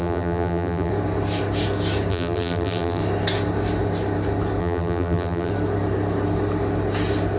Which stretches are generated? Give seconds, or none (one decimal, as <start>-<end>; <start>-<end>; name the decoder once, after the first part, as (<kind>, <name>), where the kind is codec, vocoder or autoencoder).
0.0-0.9 (vocoder, BigVGAN v2); 2.1-3.0; 4.6-5.5